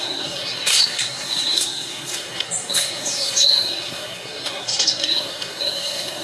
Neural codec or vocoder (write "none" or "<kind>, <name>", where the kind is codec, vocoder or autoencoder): codec, SNAC